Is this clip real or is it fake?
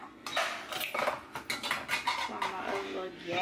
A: real